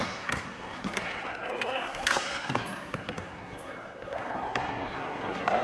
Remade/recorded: remade